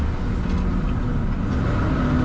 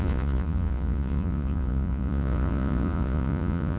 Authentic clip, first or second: first